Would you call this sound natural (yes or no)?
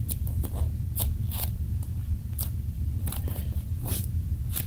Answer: no